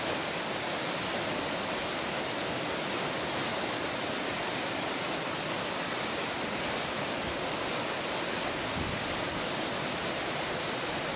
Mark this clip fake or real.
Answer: real